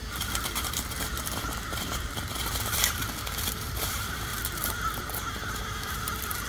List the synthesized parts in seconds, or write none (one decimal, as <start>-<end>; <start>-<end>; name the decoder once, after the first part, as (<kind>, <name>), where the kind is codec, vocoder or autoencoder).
0.0-4.3 (vocoder, BigVGAN v2); 5.6-6.5